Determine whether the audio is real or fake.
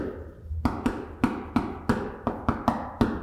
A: real